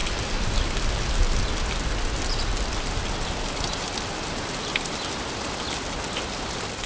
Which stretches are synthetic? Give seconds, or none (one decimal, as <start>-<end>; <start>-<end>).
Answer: none